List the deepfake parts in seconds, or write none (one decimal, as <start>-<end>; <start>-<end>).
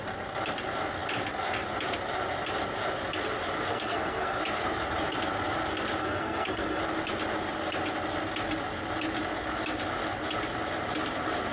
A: 3.7-4.4; 6.0-6.8